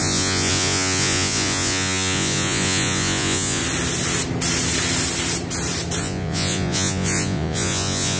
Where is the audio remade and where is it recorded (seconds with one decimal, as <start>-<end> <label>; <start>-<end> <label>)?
0.0-3.6 remade; 3.6-6.0 recorded; 6.0-8.2 remade